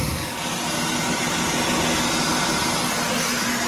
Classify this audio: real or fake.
real